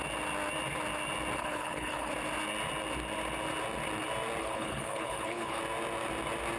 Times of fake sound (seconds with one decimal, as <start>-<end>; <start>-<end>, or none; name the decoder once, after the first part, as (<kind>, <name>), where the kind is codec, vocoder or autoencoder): 1.4-2.1 (codec, HILCodec); 4.4-5.6